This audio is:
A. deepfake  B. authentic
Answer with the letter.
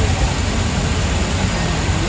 B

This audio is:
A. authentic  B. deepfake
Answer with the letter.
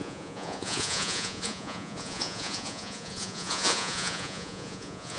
B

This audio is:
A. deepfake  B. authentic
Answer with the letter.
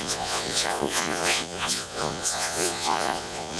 A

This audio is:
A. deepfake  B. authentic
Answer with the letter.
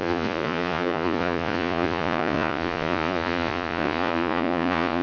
A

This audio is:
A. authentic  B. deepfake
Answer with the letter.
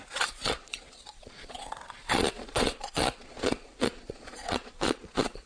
B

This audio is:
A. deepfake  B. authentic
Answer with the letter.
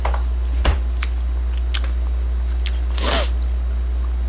B